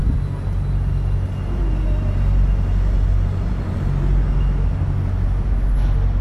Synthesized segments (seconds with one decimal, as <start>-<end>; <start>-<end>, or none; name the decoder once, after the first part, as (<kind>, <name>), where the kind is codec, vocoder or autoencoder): none